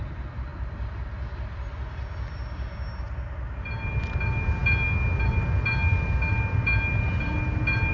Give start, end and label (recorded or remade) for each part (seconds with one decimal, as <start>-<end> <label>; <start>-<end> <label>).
0.0-7.9 recorded